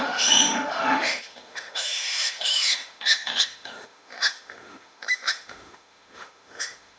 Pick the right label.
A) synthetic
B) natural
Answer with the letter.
A